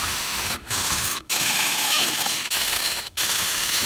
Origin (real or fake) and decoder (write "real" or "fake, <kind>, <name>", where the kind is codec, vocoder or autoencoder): fake, autoencoder, DAC-VAE